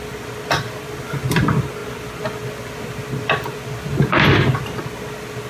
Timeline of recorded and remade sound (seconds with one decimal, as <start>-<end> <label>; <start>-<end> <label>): 0.0-5.5 recorded

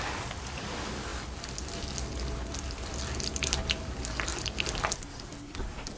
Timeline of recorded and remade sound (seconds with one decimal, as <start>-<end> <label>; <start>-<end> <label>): 0.0-6.0 recorded